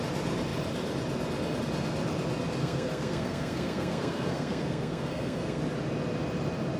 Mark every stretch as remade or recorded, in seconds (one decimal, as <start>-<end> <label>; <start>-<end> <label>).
0.0-2.6 recorded; 2.6-5.6 remade; 5.6-6.8 recorded